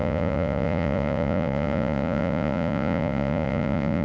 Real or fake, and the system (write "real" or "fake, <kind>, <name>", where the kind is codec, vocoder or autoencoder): fake, vocoder, Vocos